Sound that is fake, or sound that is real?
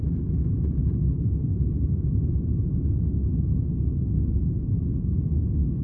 real